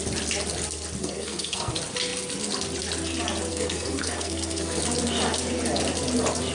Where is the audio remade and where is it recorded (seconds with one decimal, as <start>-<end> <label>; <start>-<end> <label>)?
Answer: 0.0-1.0 recorded; 1.0-1.7 remade; 1.7-3.5 recorded; 3.5-4.8 remade; 4.8-6.5 recorded